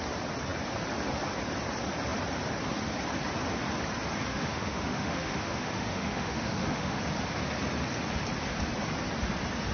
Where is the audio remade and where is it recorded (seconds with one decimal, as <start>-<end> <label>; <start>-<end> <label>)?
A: 0.0-4.3 recorded; 4.3-7.0 remade; 7.0-9.7 recorded